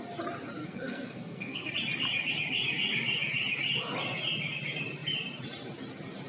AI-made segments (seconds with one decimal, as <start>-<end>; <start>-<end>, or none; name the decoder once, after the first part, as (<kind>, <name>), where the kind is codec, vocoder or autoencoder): 0.6-1.7 (codec, SNAC)